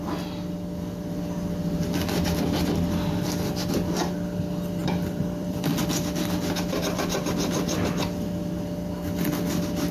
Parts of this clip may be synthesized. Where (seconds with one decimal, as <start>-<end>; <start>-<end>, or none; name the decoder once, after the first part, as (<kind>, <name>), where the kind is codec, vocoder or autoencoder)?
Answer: 4.8-5.8 (vocoder, BigVGAN v2)